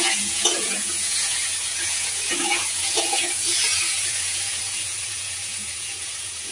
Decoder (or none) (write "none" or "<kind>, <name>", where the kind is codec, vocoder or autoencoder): vocoder, Vocos